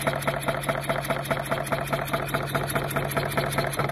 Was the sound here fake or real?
real